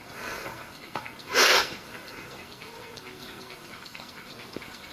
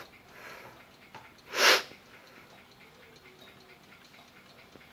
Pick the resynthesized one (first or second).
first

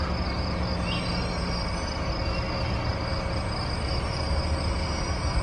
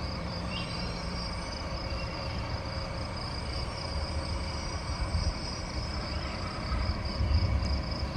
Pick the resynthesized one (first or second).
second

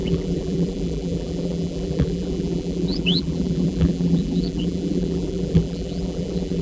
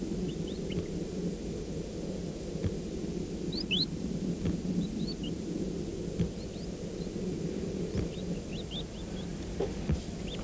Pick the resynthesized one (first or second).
first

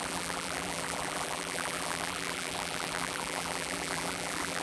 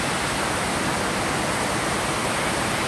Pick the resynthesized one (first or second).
first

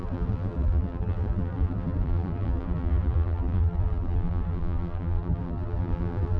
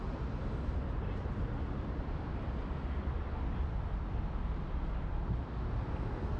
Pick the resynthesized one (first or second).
first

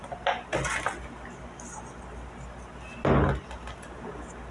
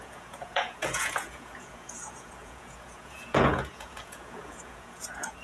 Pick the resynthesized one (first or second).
second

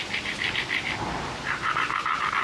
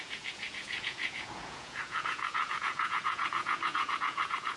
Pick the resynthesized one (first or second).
second